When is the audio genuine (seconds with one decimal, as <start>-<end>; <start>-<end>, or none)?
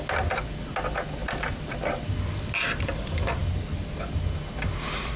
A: 0.0-1.2; 2.1-5.2